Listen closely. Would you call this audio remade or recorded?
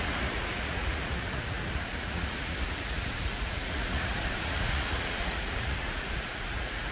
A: remade